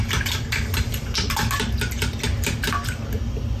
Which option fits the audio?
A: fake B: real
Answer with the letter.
B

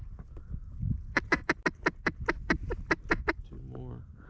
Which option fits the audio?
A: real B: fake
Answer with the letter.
A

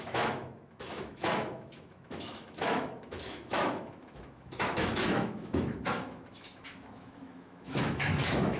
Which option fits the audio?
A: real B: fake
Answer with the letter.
B